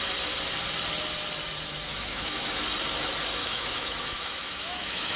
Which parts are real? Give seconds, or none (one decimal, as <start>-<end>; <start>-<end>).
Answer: 0.0-1.9; 2.5-3.4